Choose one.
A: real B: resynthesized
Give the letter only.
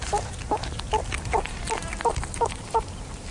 A